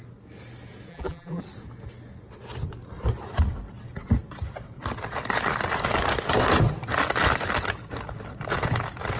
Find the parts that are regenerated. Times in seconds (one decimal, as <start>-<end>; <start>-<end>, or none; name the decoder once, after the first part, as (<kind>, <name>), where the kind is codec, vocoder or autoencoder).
0.9-1.4 (vocoder, BigVGAN v2)